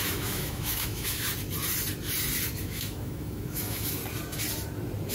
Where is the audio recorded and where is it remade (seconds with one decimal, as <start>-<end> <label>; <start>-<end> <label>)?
0.0-1.3 remade; 1.3-2.6 recorded; 2.6-4.0 remade; 4.0-5.1 recorded